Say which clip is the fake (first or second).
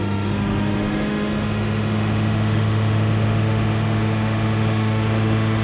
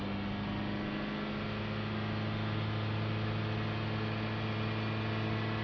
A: first